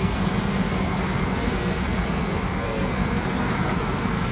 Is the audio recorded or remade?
remade